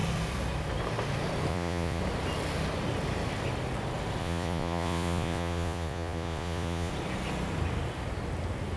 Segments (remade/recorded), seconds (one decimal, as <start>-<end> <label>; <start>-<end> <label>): 0.0-1.5 recorded; 1.5-2.0 remade; 2.0-4.2 recorded; 4.2-6.9 remade; 6.9-8.8 recorded